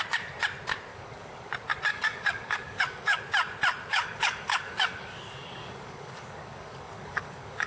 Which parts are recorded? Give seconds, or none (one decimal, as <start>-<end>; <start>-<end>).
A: 0.0-0.9; 1.5-1.9; 3.2-3.9